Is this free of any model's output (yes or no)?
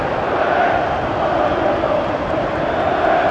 yes